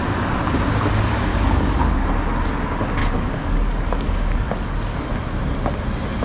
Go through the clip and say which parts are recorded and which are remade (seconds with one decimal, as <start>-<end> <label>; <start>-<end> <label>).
0.0-1.3 recorded; 1.3-2.1 remade; 2.1-3.0 recorded; 3.0-5.1 remade; 5.1-6.2 recorded